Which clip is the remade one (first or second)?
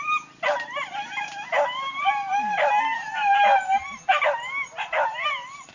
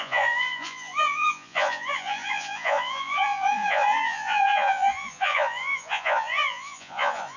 second